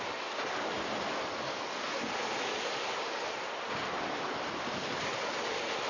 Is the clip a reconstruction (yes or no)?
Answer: no